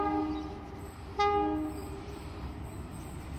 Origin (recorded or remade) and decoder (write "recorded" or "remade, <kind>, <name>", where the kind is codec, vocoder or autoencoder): recorded